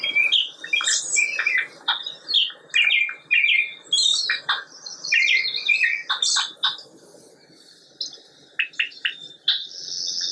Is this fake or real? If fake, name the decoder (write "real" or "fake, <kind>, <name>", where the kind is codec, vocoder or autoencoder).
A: real